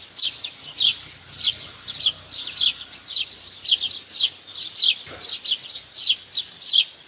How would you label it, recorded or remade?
recorded